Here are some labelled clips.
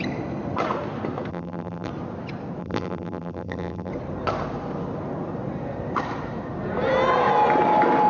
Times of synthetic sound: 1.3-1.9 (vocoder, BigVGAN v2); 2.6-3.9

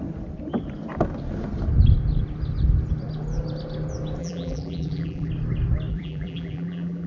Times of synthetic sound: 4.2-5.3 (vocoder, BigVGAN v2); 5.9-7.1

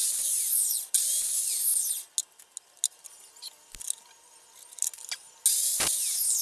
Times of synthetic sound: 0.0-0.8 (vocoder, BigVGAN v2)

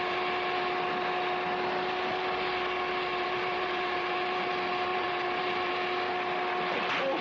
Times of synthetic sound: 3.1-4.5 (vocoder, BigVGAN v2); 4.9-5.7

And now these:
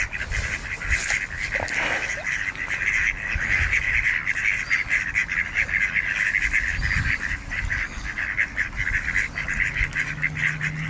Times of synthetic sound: none

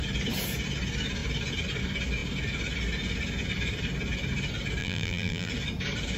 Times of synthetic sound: 4.8-5.5 (vocoder, BigVGAN v2)

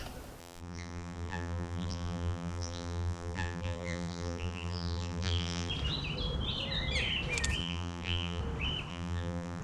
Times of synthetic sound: 0.4-5.7 (vocoder, BigVGAN v2); 7.6-8.4; 8.9-9.6